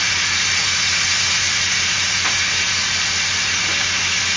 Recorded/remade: recorded